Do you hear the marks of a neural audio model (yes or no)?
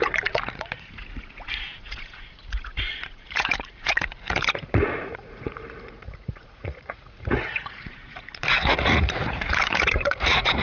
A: yes